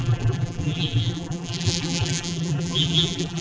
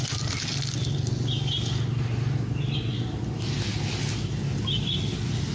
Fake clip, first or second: first